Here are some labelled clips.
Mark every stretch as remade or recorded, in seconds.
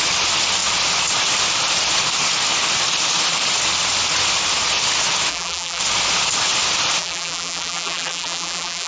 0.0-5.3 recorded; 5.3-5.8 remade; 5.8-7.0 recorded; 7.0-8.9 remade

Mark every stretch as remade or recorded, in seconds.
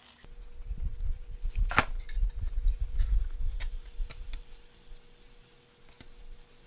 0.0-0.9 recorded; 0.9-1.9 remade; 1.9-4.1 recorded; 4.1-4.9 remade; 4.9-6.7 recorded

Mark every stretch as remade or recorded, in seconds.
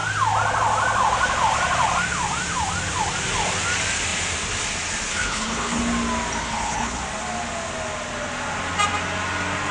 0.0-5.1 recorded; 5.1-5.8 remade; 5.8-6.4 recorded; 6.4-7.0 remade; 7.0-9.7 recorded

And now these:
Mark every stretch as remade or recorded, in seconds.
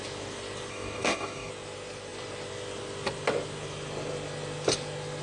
0.0-0.7 recorded; 0.7-1.5 remade; 1.5-5.2 recorded